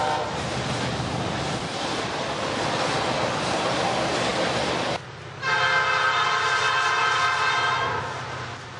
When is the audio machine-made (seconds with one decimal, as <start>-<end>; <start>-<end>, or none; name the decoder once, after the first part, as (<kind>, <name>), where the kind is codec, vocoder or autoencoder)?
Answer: none